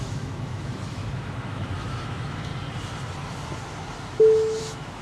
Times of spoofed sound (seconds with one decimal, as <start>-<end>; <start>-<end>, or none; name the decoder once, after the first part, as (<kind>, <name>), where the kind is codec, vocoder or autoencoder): 0.0-2.5 (autoencoder, DAC-VAE); 4.6-5.0